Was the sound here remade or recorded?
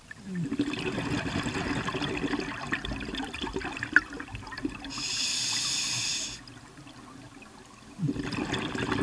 recorded